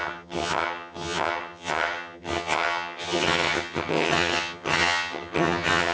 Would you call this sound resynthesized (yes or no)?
yes